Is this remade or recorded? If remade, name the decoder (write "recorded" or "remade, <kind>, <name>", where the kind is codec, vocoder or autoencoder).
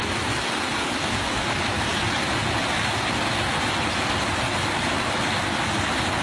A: recorded